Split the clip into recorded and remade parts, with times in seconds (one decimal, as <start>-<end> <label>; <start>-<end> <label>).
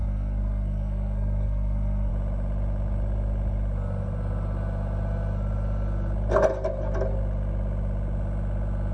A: 0.0-2.1 remade; 2.1-8.9 recorded